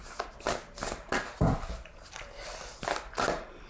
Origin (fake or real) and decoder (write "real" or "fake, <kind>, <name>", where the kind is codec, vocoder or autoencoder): real